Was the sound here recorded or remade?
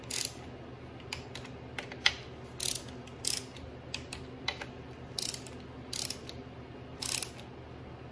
recorded